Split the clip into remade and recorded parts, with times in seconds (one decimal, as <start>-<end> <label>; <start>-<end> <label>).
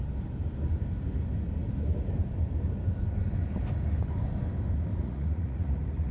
0.0-4.9 recorded; 4.9-6.1 remade